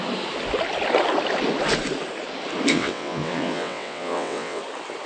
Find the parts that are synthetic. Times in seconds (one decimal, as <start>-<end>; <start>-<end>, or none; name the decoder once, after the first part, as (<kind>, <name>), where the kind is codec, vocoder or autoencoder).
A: 2.7-4.6 (vocoder, WaveNeXt)